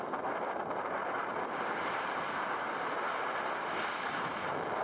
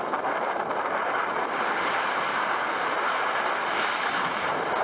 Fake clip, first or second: second